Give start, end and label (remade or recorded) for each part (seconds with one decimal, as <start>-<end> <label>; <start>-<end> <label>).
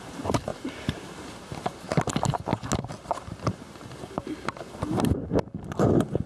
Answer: 0.0-6.3 recorded